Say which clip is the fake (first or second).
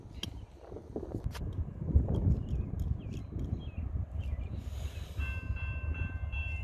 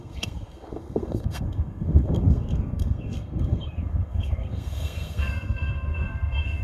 second